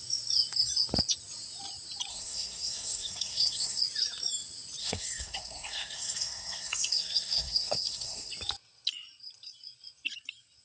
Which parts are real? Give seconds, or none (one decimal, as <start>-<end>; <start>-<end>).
0.0-2.1; 3.8-4.8; 8.3-10.6